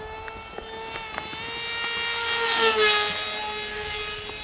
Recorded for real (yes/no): yes